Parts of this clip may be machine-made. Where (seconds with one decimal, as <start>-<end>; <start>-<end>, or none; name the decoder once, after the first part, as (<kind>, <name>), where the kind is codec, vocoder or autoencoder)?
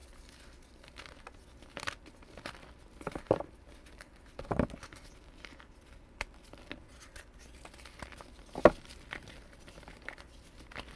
none